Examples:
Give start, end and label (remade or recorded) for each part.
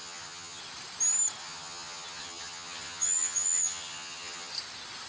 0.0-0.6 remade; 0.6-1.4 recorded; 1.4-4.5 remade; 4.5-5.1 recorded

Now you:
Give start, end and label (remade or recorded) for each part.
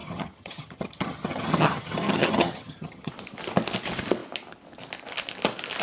0.0-3.1 remade; 3.1-5.8 recorded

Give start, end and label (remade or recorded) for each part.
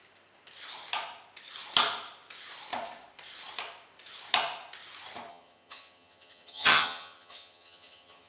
0.0-5.3 recorded; 5.3-8.3 remade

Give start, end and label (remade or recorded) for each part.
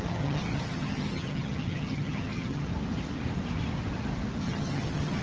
0.0-2.7 remade; 2.7-4.4 recorded; 4.4-5.2 remade